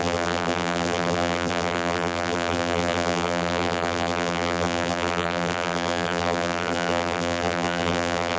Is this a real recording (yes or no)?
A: no